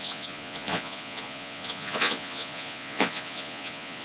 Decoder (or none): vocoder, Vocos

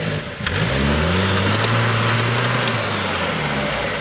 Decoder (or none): none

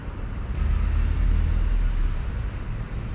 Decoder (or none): none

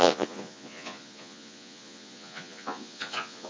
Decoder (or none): vocoder, Vocos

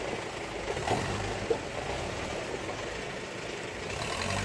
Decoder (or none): none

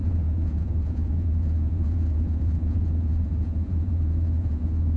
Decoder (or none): vocoder, Vocos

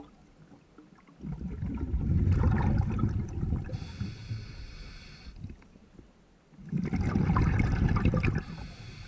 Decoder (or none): none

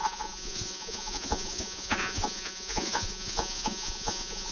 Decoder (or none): vocoder, Vocos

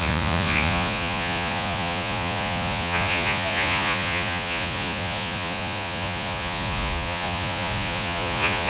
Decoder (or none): vocoder, Vocos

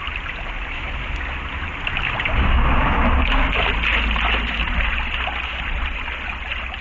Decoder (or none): none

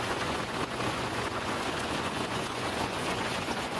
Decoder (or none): vocoder, Vocos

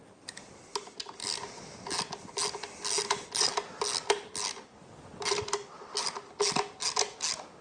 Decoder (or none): none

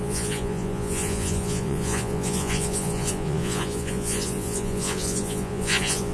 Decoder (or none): vocoder, Vocos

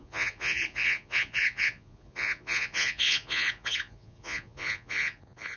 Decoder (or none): vocoder, Vocos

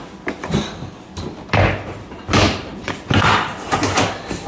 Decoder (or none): none